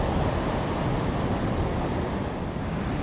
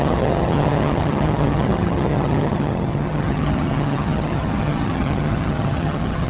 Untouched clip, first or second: first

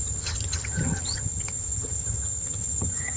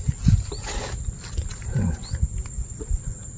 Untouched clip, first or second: second